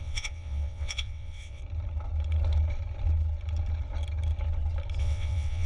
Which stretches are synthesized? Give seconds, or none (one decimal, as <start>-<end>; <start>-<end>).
0.0-1.6; 5.0-5.7